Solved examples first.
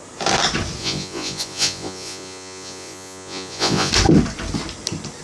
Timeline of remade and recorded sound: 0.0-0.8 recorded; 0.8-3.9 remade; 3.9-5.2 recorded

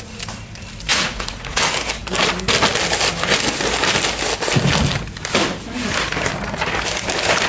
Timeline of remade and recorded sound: 0.0-0.9 recorded; 0.9-1.6 remade; 1.6-7.5 recorded